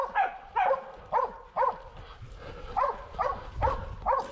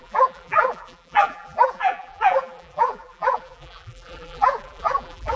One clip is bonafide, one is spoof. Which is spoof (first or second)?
second